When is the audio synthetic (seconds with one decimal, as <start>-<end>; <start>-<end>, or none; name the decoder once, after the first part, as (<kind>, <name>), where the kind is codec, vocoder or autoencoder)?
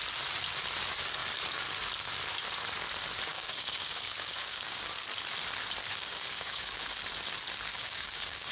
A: 3.3-4.8 (codec, DAC); 5.8-6.9; 7.7-8.5